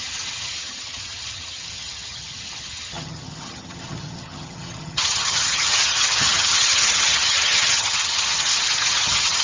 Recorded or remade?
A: remade